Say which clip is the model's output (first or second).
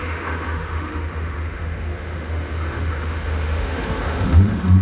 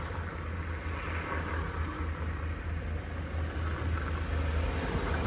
first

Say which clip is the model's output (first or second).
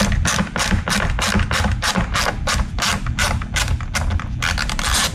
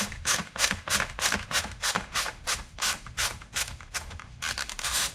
second